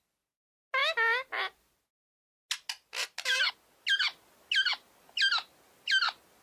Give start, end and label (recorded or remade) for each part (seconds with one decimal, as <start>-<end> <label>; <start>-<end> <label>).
0.0-6.4 recorded